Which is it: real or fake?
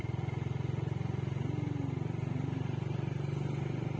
real